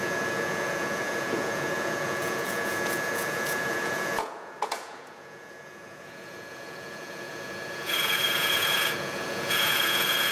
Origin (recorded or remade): remade